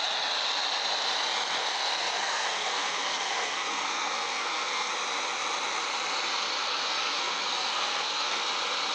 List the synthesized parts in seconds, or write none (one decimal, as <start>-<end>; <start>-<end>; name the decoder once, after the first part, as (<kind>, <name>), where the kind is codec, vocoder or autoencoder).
1.6-4.9 (codec, SNAC); 6.6-8.4